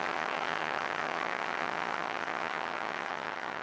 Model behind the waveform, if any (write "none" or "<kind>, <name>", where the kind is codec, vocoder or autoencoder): vocoder, HiFi-GAN